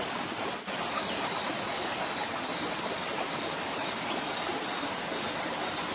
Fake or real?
real